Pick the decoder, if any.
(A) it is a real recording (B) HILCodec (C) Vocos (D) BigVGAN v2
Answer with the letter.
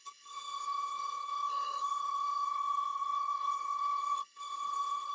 B